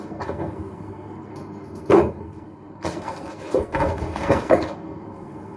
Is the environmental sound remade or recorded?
remade